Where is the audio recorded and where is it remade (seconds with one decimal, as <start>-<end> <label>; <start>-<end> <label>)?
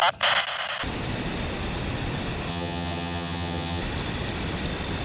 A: 0.0-2.5 recorded; 2.5-3.8 remade; 3.8-5.0 recorded